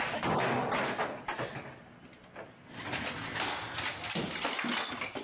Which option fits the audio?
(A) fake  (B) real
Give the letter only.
B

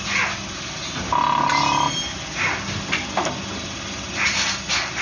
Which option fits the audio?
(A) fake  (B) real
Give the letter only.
B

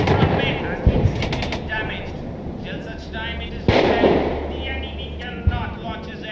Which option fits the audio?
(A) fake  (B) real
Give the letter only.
B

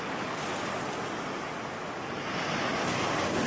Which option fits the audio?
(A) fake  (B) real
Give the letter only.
B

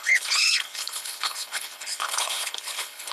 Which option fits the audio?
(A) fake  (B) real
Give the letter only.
A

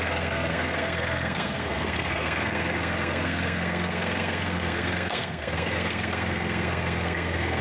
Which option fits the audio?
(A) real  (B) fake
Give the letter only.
B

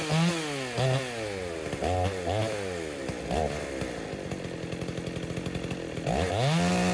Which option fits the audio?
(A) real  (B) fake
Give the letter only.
A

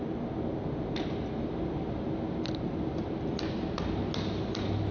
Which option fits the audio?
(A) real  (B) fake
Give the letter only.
A